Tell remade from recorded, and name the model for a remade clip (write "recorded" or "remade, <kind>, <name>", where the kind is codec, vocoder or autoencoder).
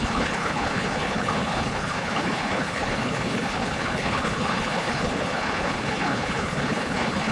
remade, codec, HILCodec